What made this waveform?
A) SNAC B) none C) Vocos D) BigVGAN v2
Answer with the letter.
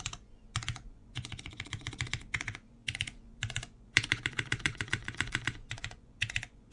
C